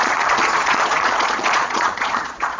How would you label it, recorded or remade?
remade